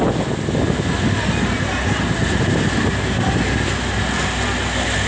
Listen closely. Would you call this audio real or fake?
real